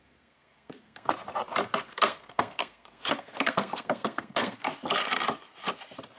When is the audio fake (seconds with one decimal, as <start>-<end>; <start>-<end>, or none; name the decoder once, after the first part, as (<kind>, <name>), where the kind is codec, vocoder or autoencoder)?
0.0-1.1 (codec, SNAC); 1.9-4.7